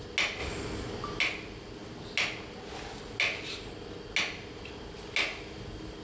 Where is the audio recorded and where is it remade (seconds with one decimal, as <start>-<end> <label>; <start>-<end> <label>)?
0.0-6.0 recorded